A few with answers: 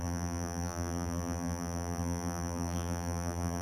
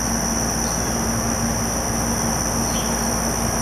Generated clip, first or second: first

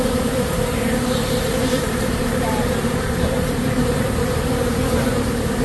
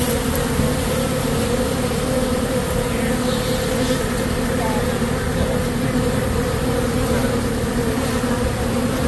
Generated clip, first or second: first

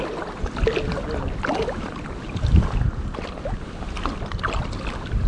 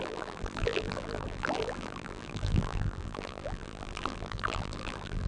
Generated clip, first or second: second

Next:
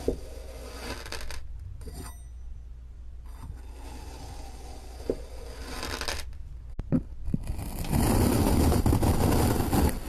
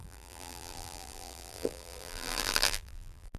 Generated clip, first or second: second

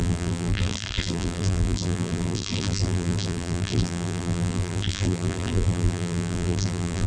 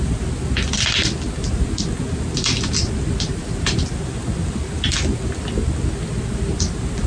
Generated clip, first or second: first